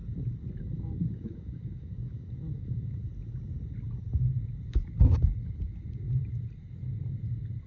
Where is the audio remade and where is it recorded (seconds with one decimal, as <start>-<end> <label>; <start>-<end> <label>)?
0.0-0.6 recorded; 0.6-3.1 remade; 3.1-7.7 recorded